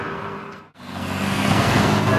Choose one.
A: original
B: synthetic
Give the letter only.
B